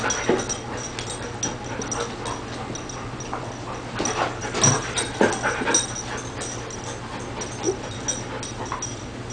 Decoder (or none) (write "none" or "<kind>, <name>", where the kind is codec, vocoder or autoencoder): none